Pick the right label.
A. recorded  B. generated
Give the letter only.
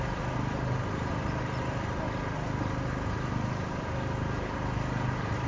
A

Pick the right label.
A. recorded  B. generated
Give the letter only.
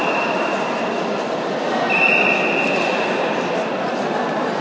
A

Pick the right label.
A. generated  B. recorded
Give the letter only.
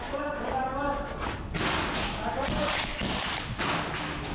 B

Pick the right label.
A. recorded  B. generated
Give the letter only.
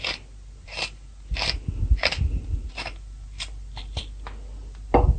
A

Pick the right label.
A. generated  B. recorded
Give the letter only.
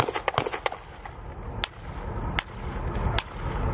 B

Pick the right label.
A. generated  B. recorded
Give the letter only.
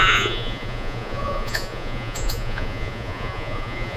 A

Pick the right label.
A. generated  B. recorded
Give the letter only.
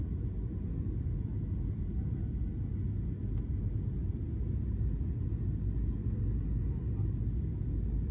B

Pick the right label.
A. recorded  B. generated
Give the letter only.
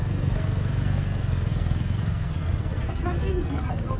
B